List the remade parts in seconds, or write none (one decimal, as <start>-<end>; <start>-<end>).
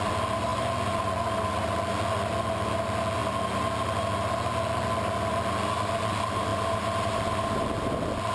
none